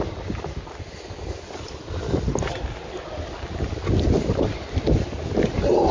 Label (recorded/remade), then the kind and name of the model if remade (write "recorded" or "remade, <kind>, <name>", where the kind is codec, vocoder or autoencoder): recorded